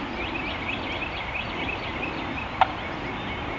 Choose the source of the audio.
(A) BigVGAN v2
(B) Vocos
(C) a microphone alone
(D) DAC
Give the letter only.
C